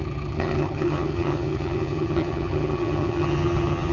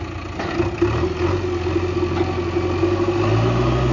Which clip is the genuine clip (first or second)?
second